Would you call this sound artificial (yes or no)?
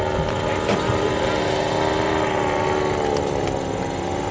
no